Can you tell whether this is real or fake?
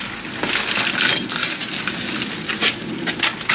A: real